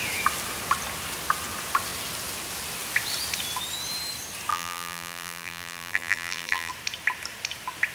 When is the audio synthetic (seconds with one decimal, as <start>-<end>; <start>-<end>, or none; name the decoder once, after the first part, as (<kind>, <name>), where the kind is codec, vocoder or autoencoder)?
4.5-6.7 (vocoder, BigVGAN v2)